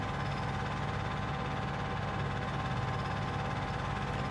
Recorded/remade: recorded